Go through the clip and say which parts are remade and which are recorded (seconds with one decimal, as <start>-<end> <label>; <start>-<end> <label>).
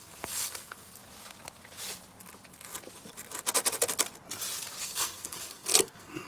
0.0-1.0 remade; 1.0-4.8 recorded; 4.8-6.3 remade